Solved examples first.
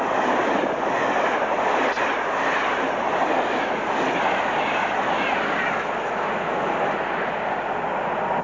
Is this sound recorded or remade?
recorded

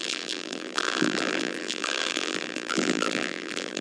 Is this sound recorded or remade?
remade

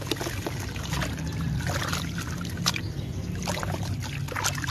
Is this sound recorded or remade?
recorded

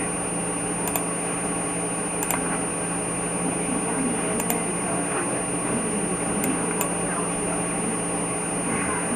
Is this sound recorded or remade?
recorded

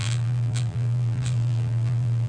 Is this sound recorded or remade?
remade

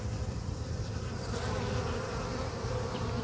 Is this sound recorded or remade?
remade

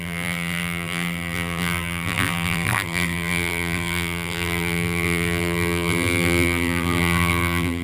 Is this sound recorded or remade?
remade